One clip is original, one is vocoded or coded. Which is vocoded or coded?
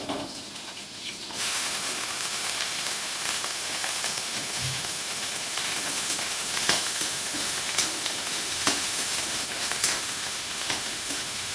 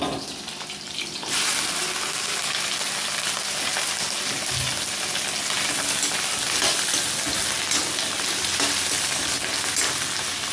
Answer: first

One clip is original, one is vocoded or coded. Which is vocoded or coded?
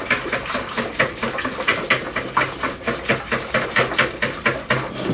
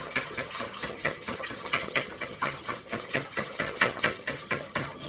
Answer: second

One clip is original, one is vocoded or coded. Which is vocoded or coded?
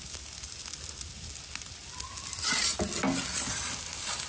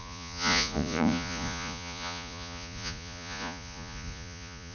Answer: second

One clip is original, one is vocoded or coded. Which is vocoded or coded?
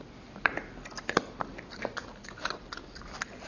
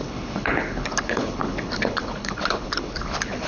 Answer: second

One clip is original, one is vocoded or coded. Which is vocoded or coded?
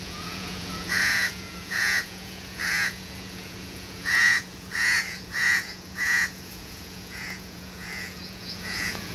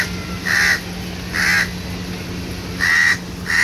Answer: first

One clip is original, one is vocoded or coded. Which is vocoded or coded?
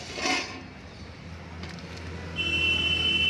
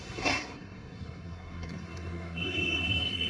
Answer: second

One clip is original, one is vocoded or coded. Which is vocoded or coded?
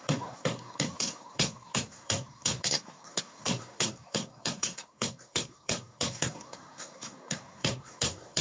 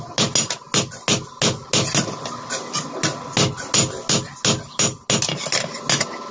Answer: first